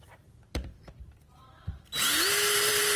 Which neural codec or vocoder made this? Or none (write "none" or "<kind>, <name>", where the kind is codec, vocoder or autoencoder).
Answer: vocoder, BigVGAN v2